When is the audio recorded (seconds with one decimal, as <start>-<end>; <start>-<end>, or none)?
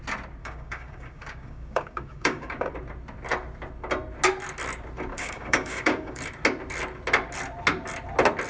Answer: 0.0-0.4; 2.7-5.1; 6.2-8.5